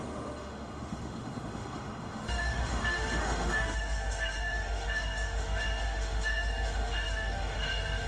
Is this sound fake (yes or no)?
yes